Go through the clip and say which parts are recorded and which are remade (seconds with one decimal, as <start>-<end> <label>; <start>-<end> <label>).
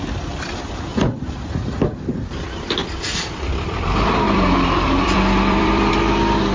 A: 0.0-0.9 recorded; 0.9-1.5 remade; 1.5-2.8 recorded; 2.8-5.9 remade; 5.9-6.5 recorded